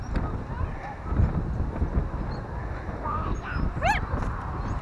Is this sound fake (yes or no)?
no